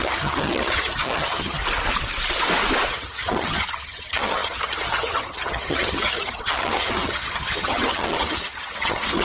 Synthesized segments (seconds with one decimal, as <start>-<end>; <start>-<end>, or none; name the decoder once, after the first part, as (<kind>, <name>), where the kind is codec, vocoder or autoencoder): 0.0-1.6 (vocoder, HiFi-GAN); 2.9-9.2